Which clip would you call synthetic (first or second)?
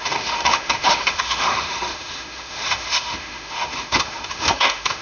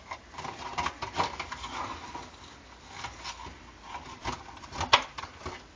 first